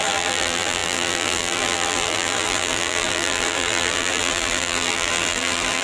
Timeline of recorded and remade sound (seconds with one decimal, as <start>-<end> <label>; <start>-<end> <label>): 0.0-5.8 remade